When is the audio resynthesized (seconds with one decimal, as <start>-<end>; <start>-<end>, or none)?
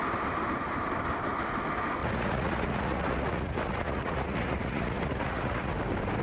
2.0-5.7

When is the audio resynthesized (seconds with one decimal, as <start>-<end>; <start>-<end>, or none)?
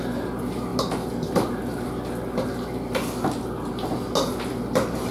none